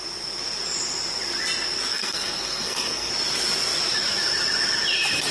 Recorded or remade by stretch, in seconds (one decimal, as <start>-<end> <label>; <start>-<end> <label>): 0.0-1.9 recorded; 1.9-3.1 remade; 3.1-5.3 recorded